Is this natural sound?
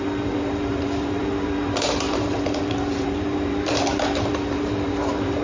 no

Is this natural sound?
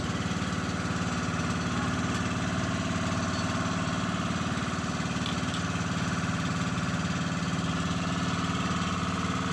yes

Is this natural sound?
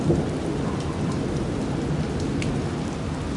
yes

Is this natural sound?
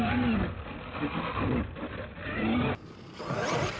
yes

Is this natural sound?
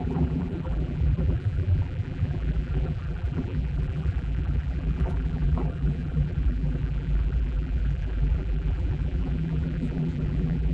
no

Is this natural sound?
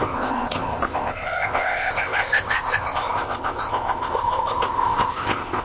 no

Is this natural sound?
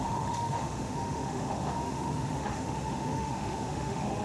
no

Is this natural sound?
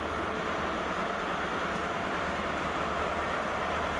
no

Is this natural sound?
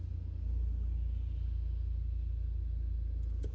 yes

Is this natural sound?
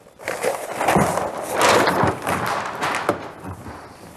yes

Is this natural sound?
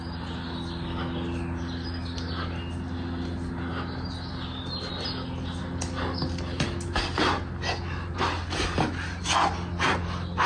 yes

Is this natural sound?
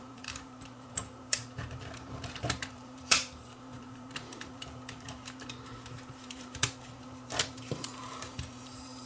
no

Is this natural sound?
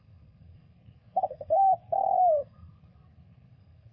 no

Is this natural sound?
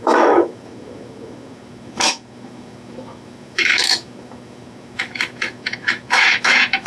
no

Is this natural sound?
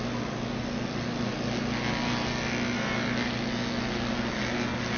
yes